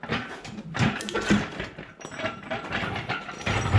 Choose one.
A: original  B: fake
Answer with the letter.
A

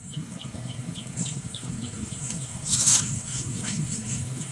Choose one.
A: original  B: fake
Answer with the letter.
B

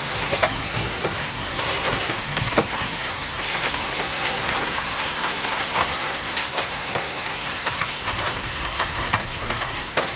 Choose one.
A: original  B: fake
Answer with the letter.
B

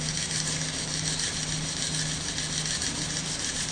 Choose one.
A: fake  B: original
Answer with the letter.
B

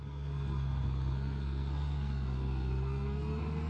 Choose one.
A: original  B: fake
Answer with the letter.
B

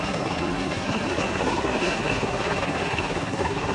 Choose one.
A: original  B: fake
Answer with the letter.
B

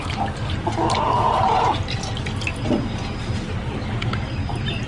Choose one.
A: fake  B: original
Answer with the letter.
B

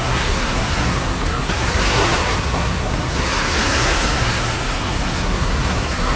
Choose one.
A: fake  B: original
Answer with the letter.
A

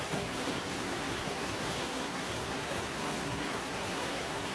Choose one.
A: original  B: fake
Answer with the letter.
B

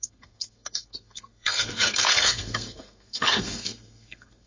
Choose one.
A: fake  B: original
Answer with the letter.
A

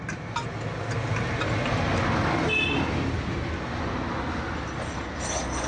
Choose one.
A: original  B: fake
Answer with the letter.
A